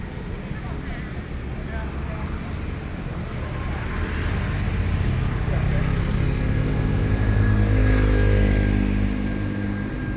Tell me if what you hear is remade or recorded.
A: recorded